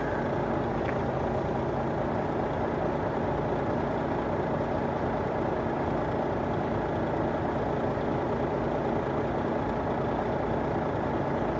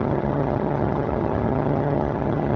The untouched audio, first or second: first